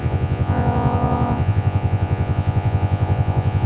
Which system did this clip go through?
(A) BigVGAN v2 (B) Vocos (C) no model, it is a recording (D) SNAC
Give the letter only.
B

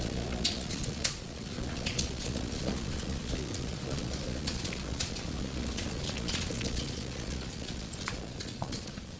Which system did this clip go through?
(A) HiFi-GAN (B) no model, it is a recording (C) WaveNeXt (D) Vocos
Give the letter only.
D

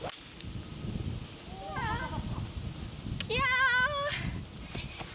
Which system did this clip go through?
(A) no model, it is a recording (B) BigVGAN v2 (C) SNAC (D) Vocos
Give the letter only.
A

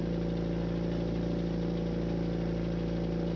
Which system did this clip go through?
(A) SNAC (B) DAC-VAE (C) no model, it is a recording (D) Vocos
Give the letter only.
C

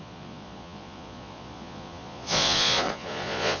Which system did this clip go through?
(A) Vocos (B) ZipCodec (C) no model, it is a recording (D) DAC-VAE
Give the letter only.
A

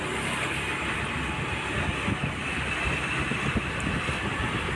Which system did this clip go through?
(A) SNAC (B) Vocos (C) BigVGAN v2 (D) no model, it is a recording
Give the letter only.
D